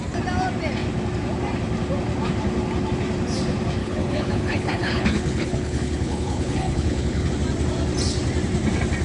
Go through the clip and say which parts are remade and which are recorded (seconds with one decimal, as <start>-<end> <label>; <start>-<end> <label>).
0.0-3.8 recorded; 3.8-7.3 remade; 7.3-9.0 recorded